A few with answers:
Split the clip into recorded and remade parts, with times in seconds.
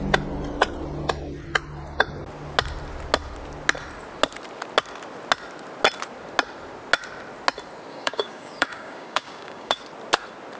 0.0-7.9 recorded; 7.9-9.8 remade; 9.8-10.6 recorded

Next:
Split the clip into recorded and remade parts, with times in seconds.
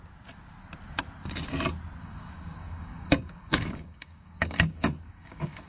0.0-2.0 recorded; 2.0-5.7 remade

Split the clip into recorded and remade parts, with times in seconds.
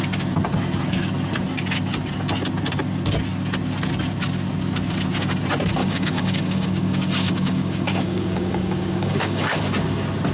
0.0-5.8 recorded; 5.8-9.6 remade; 9.6-10.3 recorded